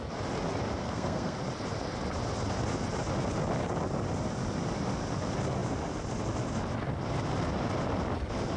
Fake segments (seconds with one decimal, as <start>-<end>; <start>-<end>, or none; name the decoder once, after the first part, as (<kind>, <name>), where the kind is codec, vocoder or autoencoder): 0.8-1.4 (codec, SNAC)